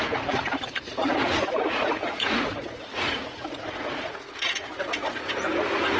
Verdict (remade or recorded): remade